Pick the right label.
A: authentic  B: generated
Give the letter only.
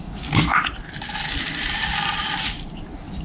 A